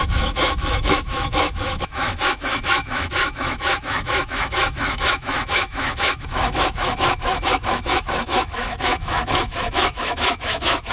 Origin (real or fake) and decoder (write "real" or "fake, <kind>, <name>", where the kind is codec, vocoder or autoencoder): fake, autoencoder, DAC-VAE